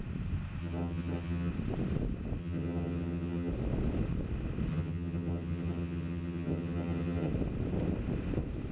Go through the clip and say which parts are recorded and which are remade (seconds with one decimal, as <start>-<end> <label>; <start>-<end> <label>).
0.0-0.6 recorded; 0.6-1.5 remade; 1.5-2.4 recorded; 2.4-3.5 remade; 3.5-4.7 recorded; 4.7-7.3 remade; 7.3-8.7 recorded